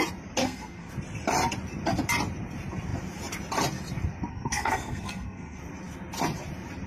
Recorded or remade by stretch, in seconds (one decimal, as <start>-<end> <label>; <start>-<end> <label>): 0.0-0.4 recorded; 0.4-0.9 remade; 0.9-4.3 recorded; 4.3-5.6 remade; 5.6-6.9 recorded